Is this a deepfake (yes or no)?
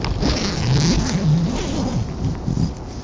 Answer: no